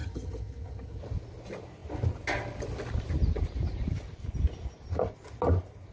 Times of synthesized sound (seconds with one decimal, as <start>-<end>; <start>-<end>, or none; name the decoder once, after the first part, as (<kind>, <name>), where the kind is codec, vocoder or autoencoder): 0.0-1.0 (vocoder, HiFi-GAN)